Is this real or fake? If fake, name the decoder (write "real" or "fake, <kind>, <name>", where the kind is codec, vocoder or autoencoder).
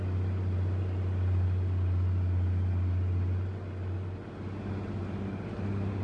real